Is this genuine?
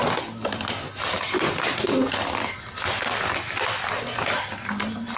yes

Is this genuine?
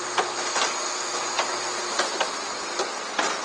yes